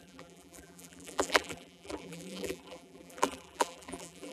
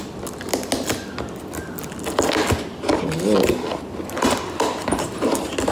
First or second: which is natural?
second